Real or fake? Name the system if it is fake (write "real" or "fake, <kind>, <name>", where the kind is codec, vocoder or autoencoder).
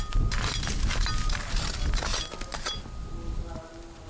real